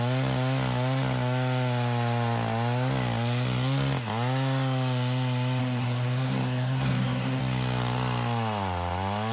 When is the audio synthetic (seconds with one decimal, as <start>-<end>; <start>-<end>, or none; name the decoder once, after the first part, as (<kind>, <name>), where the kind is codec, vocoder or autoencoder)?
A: 5.6-7.4 (codec, SNAC)